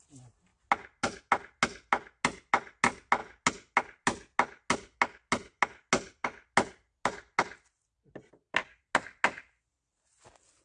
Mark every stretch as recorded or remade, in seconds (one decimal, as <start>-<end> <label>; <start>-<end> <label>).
0.0-10.6 recorded

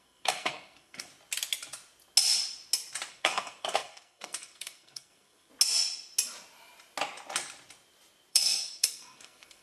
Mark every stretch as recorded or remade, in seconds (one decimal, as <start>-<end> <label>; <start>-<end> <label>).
0.0-1.1 remade; 1.1-3.1 recorded; 3.1-5.5 remade; 5.5-8.3 recorded; 8.3-9.6 remade